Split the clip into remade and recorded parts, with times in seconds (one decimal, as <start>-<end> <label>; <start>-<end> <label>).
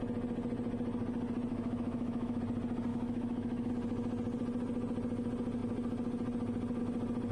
0.0-1.5 recorded; 1.5-2.4 remade; 2.4-2.9 recorded; 2.9-3.7 remade; 3.7-7.3 recorded